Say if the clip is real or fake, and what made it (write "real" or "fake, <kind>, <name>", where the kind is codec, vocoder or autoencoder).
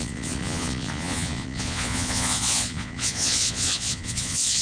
fake, vocoder, Vocos